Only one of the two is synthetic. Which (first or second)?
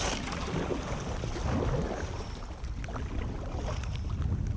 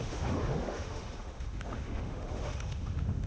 second